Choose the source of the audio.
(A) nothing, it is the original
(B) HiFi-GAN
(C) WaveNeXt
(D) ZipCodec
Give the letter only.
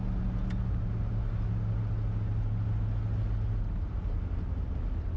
A